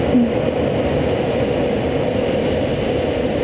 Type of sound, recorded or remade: recorded